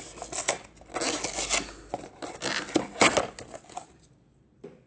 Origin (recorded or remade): recorded